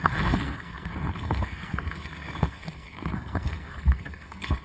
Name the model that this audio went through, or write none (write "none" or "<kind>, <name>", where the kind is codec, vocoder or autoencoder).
codec, SNAC